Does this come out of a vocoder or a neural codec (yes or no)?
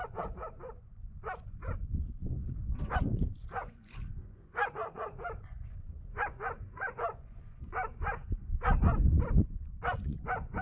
yes